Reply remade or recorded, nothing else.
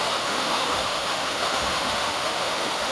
remade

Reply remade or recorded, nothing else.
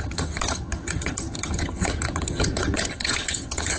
remade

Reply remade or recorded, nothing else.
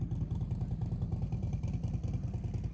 recorded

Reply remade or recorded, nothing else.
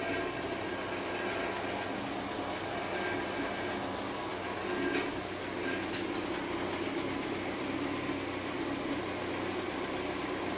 recorded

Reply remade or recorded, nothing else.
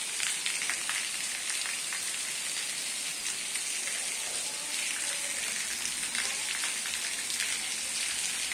recorded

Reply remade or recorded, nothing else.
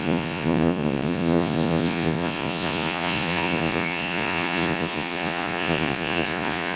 remade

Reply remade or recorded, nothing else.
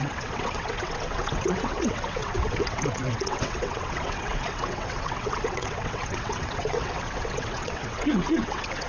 remade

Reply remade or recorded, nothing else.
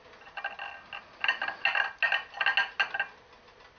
recorded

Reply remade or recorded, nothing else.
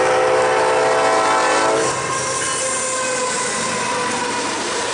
recorded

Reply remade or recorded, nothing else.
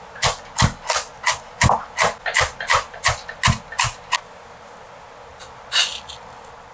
recorded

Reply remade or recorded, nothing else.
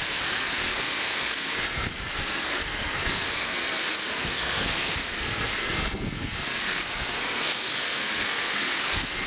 remade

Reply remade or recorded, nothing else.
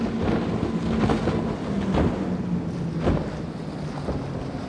recorded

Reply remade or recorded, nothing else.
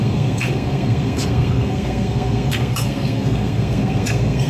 remade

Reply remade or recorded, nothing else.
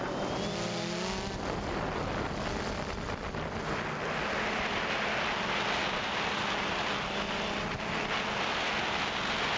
recorded